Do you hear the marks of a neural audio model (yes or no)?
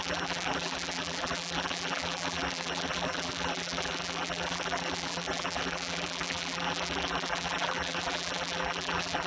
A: yes